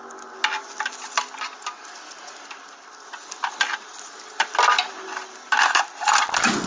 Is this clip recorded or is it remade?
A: recorded